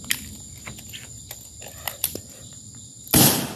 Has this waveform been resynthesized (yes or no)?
no